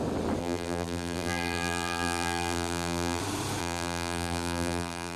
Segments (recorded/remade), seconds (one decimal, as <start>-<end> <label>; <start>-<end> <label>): 0.0-0.4 recorded; 0.4-3.2 remade; 3.2-3.6 recorded; 3.6-5.2 remade